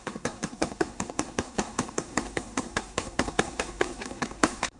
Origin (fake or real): fake